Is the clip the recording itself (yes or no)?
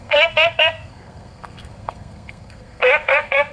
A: no